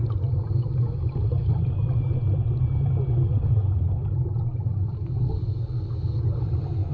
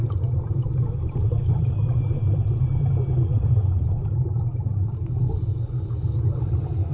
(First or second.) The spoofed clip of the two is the second